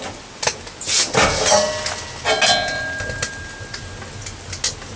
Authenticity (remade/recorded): recorded